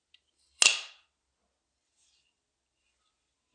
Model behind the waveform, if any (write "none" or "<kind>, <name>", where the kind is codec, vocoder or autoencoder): none